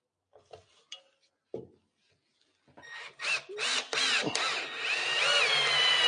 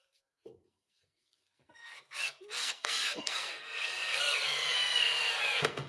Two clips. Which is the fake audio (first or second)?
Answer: second